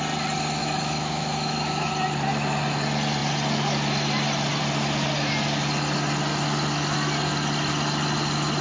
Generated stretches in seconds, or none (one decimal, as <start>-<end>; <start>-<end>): 0.6-1.9